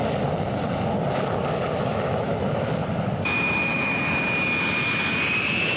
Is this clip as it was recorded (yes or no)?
yes